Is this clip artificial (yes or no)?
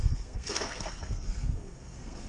yes